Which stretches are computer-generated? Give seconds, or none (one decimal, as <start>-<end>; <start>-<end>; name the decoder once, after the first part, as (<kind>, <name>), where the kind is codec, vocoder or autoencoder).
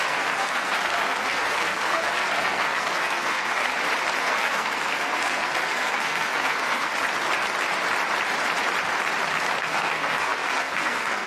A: 0.0-3.7 (codec, SNAC); 4.2-6.9; 9.6-11.3